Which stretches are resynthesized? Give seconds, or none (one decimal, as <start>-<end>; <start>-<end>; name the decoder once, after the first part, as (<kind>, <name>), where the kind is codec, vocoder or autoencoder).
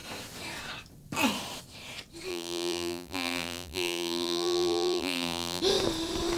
2.3-5.6 (vocoder, BigVGAN v2)